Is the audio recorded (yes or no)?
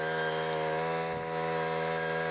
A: yes